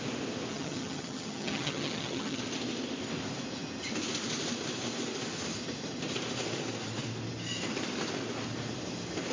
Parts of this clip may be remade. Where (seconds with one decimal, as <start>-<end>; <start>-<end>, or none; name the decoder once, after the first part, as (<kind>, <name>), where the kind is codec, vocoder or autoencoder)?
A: 0.5-2.4 (vocoder, HiFi-GAN)